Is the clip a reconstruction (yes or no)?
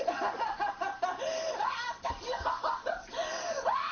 no